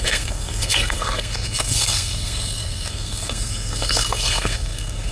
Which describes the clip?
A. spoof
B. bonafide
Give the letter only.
A